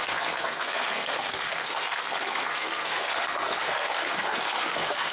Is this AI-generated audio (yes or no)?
yes